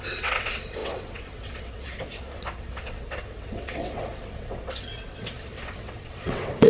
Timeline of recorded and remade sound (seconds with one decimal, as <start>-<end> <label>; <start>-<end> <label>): 0.0-6.7 remade